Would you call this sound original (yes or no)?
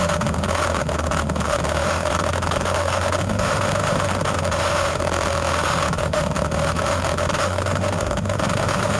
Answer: no